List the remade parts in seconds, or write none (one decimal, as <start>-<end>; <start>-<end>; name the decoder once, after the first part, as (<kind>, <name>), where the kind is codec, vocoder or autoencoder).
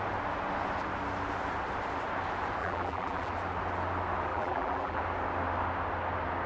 2.6-3.3 (vocoder, BigVGAN v2); 4.3-5.0